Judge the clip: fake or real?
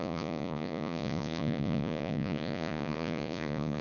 fake